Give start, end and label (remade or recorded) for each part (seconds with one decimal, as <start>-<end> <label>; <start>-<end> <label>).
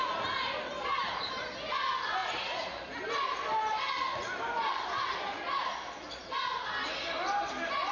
0.0-7.9 recorded